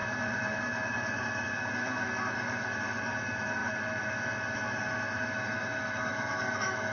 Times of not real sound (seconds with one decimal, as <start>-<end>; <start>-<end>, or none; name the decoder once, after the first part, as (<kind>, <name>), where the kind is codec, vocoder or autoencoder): 0.0-6.9 (autoencoder, DAC-VAE)